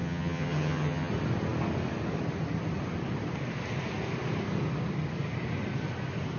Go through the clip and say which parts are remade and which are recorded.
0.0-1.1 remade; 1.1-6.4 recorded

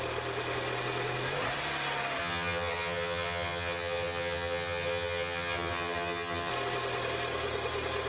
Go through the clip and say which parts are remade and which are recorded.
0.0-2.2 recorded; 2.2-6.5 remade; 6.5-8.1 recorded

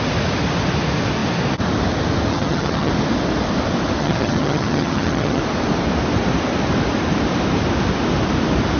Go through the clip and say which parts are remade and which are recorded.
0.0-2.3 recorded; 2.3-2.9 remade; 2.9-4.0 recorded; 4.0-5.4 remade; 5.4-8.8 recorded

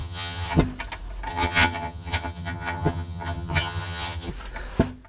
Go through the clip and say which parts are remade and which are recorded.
0.0-0.6 remade; 0.6-1.3 recorded; 1.3-4.3 remade; 4.3-5.1 recorded

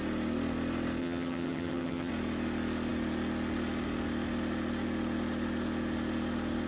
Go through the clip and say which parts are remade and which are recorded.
0.0-1.0 recorded; 1.0-2.1 remade; 2.1-6.7 recorded